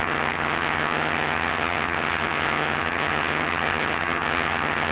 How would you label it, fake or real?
fake